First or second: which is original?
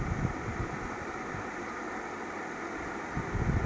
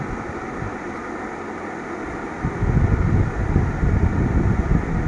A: second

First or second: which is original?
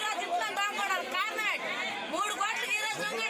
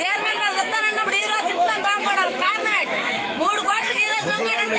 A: first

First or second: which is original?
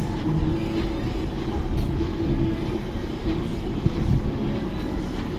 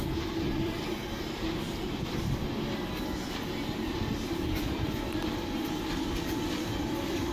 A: first